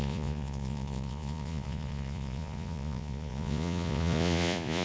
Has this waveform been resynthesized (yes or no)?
yes